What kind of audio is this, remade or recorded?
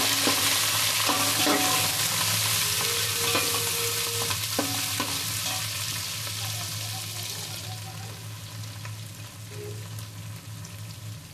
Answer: recorded